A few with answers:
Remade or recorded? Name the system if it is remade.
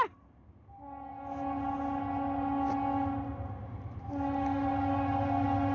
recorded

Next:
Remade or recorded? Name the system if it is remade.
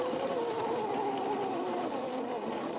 recorded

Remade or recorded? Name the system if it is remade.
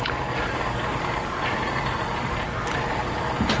recorded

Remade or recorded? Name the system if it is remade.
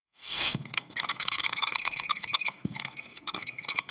remade, codec, SNAC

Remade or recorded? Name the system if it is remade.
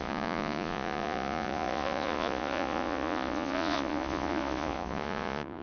remade, vocoder, Vocos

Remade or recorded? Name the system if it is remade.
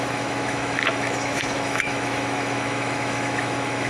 remade, autoencoder, DAC-VAE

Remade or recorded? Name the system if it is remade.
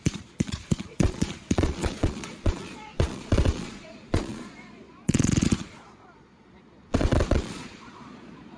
remade, vocoder, Vocos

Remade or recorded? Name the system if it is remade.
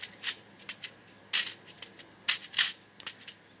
recorded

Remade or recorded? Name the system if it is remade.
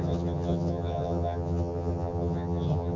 remade, vocoder, HiFi-GAN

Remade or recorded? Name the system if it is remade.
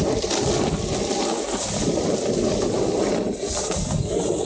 recorded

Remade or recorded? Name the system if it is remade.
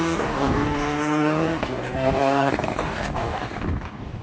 remade, codec, DAC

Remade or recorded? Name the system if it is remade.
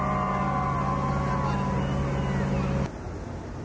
recorded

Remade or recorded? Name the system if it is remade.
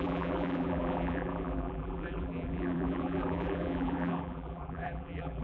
remade, vocoder, BigVGAN v2